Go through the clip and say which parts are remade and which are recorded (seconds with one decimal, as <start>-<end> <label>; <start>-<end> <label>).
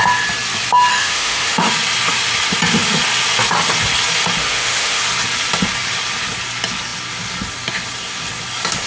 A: 0.0-0.9 recorded; 0.9-1.7 remade; 1.7-4.4 recorded; 4.4-5.0 remade; 5.0-8.9 recorded